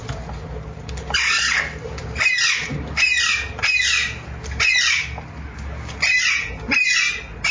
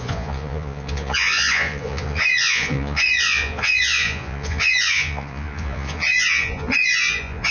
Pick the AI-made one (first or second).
second